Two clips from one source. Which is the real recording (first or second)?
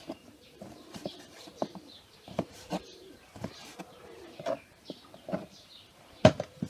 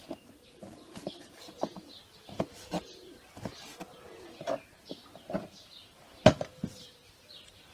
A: second